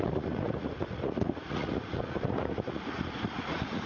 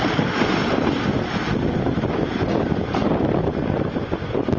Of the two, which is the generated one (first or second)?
first